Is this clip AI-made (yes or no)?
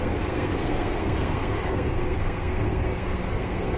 yes